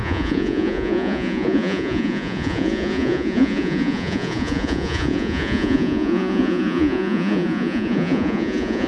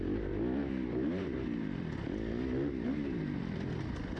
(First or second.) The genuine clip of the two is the second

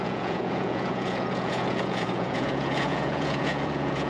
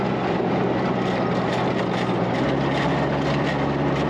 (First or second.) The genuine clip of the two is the second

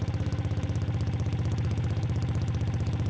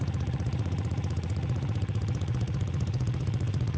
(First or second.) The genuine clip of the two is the first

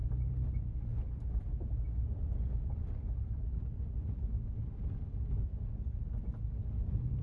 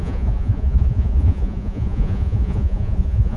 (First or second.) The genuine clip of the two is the first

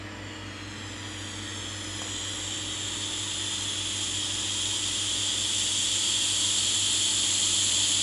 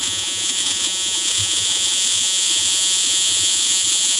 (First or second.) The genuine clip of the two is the first